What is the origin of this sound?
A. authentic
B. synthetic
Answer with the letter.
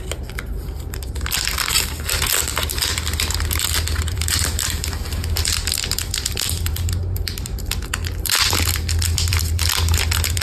B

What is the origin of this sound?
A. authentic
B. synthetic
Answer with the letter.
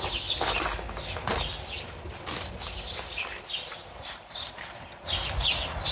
A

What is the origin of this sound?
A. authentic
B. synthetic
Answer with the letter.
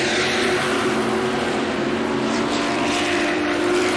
B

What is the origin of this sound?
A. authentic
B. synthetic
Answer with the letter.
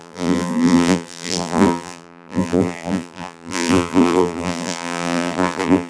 B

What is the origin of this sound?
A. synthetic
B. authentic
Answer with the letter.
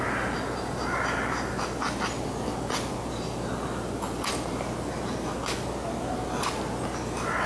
B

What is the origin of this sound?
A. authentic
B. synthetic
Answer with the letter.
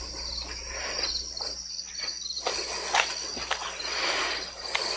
A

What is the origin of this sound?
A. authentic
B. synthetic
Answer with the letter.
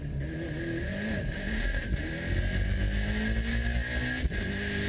A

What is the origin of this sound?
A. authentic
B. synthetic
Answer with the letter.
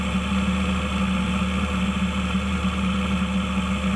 A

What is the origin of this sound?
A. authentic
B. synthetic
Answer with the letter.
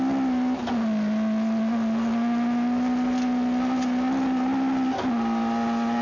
A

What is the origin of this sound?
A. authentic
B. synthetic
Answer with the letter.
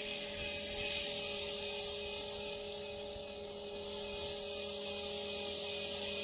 A